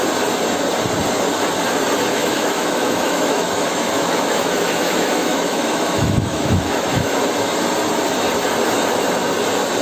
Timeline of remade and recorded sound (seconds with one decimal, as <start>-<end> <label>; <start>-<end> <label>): 0.0-2.2 recorded; 2.2-7.2 remade; 7.2-9.8 recorded